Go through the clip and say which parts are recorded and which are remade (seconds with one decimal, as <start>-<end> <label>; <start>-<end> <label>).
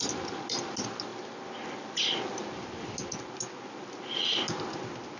0.0-5.2 recorded